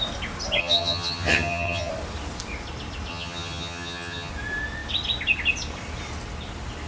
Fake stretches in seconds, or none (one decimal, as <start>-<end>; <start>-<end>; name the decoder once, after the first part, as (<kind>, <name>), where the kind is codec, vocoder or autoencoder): 0.6-1.9 (vocoder, HiFi-GAN); 3.1-4.3